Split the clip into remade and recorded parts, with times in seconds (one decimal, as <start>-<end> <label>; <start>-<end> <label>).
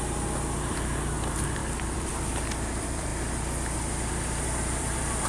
0.0-5.3 remade